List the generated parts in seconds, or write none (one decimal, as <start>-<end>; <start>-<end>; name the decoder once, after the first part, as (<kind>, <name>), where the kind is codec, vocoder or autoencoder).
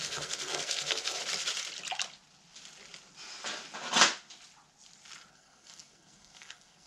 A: 0.0-1.2 (codec, SNAC); 5.3-6.9